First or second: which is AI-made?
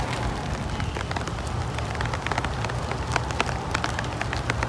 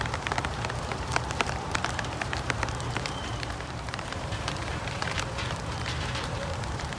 second